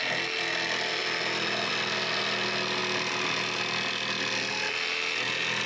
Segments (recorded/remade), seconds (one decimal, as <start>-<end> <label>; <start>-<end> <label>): 0.0-5.7 recorded